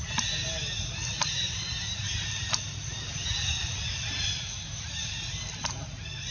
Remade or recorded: recorded